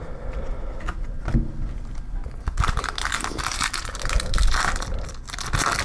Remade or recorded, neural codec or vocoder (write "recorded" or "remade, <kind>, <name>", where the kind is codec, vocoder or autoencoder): recorded